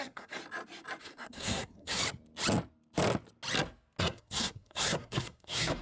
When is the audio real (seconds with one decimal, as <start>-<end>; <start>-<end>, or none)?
0.4-1.0; 2.0-4.0